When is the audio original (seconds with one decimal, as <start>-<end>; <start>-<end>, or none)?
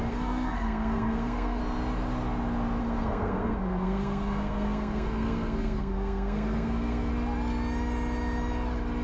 1.6-2.8; 7.1-9.0